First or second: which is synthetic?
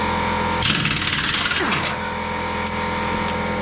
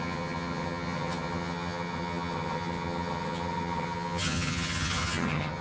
second